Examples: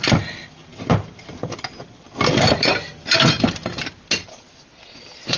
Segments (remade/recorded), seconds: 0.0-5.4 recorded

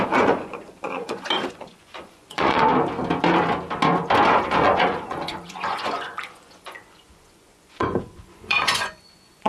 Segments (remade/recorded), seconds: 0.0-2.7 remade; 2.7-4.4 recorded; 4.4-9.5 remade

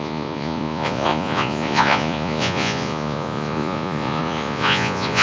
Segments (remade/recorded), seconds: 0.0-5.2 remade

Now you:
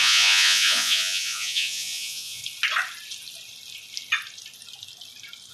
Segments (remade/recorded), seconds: 0.0-2.4 remade; 2.4-5.5 recorded

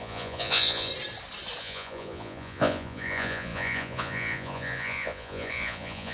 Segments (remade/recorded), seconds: 0.0-0.9 remade; 0.9-1.6 recorded; 1.6-6.1 remade